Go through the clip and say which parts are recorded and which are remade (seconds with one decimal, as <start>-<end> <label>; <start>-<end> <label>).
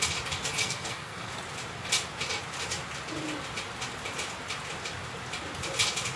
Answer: 0.0-0.6 recorded; 0.6-1.3 remade; 1.3-6.2 recorded